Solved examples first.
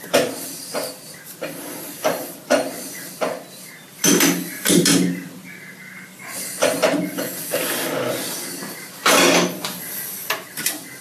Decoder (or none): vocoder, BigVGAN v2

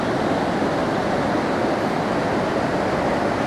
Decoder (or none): none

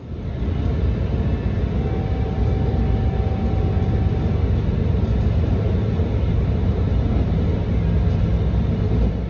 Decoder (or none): none